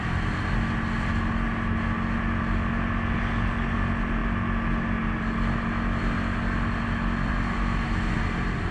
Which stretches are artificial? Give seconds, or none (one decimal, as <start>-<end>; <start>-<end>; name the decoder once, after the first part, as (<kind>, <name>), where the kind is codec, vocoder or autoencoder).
none

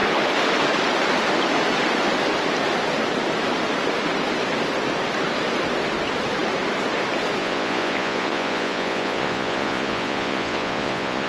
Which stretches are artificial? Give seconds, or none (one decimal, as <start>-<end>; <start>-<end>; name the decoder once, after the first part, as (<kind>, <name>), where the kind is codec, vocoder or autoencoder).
7.4-11.3 (vocoder, Vocos)